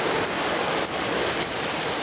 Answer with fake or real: real